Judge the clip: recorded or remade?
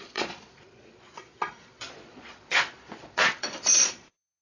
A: remade